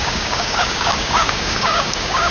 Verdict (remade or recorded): remade